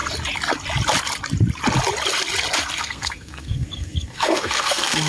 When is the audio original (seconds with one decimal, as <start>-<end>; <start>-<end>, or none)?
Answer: 0.0-2.8